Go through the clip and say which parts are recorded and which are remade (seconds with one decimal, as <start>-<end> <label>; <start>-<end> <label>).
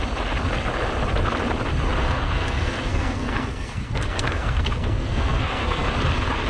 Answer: 0.0-2.0 recorded; 2.0-5.9 remade; 5.9-6.5 recorded